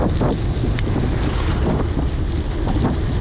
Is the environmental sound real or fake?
real